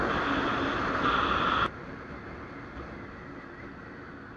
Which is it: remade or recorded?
recorded